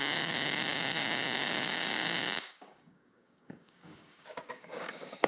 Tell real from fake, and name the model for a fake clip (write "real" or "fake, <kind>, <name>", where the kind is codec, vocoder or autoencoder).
fake, codec, DAC